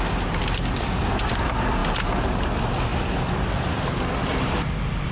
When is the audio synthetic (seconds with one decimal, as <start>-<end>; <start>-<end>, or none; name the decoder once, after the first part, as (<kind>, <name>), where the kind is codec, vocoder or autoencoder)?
none